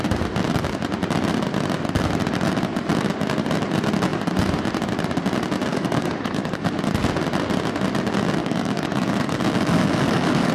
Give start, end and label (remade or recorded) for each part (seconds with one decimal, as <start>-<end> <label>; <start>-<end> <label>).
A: 0.0-5.7 recorded; 5.7-6.7 remade; 6.7-8.4 recorded; 8.4-10.5 remade